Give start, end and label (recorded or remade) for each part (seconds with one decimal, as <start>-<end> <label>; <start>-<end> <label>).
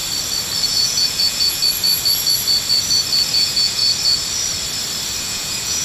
0.0-0.6 recorded; 0.6-1.6 remade; 1.6-3.3 recorded; 3.3-3.8 remade; 3.8-5.2 recorded; 5.2-5.8 remade